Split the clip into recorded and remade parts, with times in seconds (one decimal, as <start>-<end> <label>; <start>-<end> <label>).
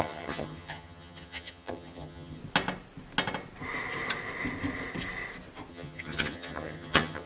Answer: 0.0-2.4 remade; 2.4-5.7 recorded; 5.7-7.3 remade